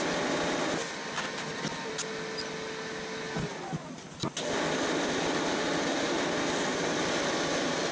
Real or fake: real